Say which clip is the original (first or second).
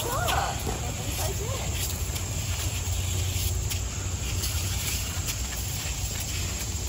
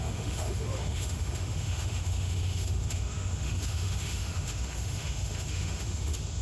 first